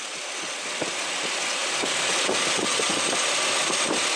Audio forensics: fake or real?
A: real